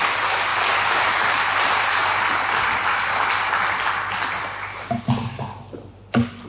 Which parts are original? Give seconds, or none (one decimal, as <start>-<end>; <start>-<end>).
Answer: 0.0-6.5